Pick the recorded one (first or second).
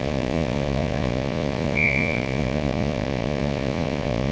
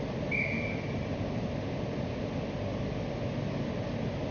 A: second